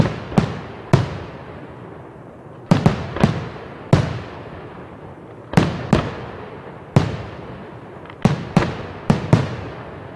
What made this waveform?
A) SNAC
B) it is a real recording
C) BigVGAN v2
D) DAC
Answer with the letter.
B